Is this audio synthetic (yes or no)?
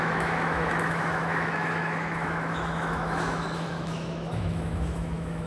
yes